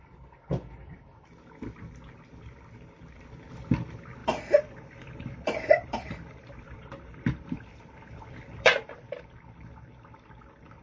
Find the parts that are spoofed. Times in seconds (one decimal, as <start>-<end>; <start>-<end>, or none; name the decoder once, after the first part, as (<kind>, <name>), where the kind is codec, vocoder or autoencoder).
4.2-9.2 (vocoder, BigVGAN v2)